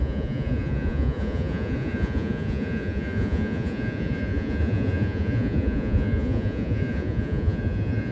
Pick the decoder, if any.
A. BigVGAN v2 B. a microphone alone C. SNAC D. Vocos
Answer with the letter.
D